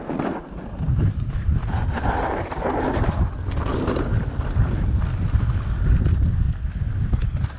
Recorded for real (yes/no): yes